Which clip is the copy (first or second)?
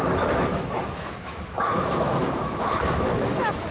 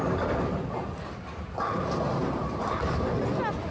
first